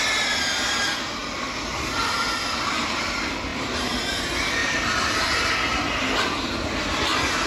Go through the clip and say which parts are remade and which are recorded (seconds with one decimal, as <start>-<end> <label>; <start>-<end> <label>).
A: 0.0-4.6 recorded; 4.6-5.5 remade; 5.5-7.5 recorded